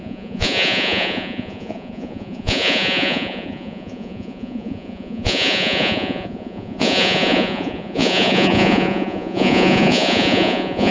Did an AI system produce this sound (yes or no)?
yes